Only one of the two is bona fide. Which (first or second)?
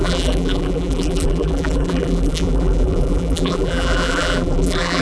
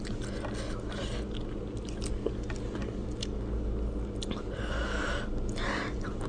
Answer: second